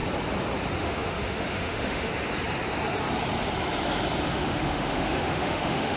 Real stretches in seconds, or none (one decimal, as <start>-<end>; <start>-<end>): 0.0-0.8; 2.1-4.2